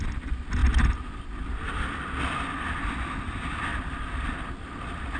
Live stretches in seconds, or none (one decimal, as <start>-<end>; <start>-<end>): 0.0-5.2